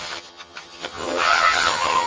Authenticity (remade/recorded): remade